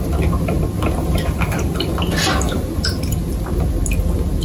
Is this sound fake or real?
real